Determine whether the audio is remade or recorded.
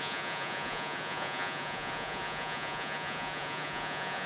remade